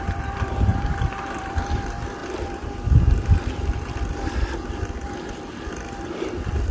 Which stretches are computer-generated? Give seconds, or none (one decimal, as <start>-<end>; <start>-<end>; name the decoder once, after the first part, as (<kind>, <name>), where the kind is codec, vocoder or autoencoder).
none